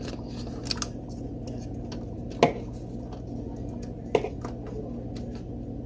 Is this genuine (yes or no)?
yes